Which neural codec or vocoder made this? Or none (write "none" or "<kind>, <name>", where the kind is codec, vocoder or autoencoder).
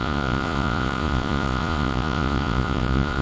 vocoder, Vocos